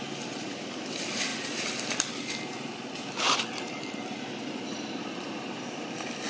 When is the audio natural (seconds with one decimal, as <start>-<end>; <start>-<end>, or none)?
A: 0.0-6.3